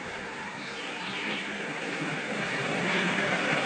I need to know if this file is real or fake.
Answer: fake